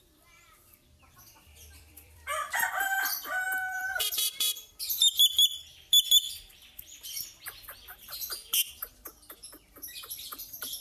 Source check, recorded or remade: remade